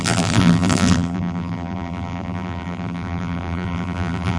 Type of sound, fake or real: fake